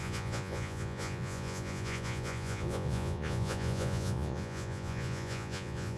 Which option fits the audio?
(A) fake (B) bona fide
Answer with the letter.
A